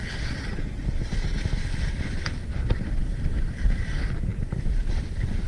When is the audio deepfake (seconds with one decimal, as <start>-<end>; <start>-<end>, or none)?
1.6-3.8